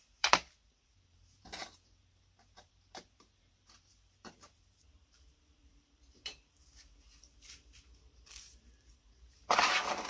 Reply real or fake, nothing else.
fake